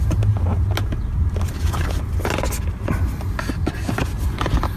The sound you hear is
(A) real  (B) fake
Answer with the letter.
A